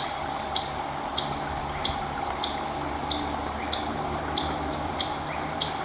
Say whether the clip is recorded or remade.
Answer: recorded